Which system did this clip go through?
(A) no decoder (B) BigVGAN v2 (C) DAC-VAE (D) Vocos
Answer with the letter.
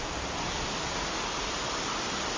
A